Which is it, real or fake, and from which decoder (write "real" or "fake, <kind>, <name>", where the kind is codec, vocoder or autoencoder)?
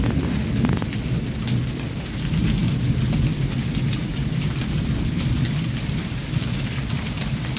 real